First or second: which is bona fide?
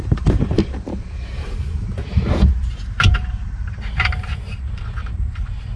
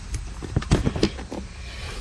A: second